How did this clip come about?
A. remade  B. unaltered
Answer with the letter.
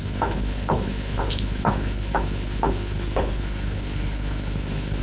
A